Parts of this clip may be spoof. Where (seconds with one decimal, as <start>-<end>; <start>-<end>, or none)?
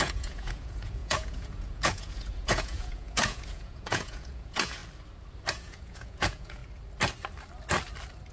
0.0-4.8; 5.5-6.6